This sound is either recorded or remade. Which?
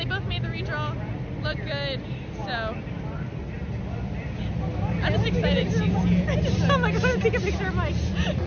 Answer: recorded